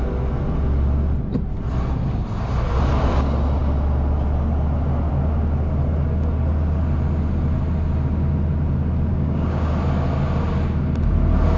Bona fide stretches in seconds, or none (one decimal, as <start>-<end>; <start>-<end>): 0.0-9.1; 9.7-11.6